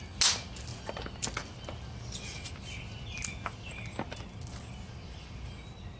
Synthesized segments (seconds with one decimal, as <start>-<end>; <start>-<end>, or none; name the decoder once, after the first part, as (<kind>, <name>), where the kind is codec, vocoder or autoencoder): none